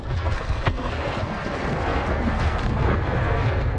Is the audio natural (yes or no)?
no